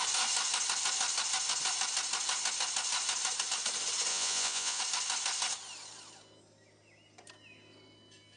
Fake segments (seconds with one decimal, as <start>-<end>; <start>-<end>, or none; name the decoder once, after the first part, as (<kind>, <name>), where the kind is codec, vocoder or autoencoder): 4.1-4.8 (vocoder, Vocos)